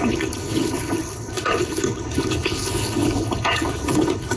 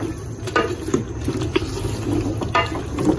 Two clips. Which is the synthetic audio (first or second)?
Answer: first